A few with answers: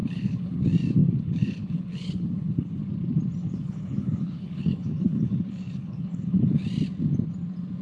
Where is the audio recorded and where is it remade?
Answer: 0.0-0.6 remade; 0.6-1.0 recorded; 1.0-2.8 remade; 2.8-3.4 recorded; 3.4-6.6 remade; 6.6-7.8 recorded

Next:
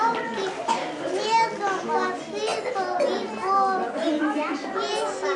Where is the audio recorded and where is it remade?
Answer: 0.0-5.4 recorded

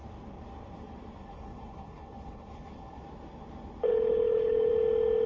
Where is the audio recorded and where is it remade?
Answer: 0.0-1.2 recorded; 1.2-3.0 remade; 3.0-3.9 recorded; 3.9-4.7 remade; 4.7-5.3 recorded

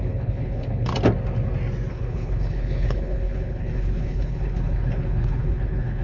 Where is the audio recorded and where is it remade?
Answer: 0.0-0.9 remade; 0.9-1.9 recorded; 1.9-6.0 remade